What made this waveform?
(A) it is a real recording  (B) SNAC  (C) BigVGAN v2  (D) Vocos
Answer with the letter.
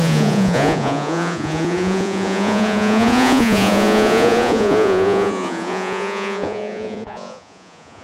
D